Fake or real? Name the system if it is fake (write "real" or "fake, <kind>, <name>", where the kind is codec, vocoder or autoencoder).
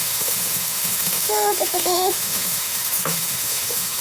fake, autoencoder, DAC-VAE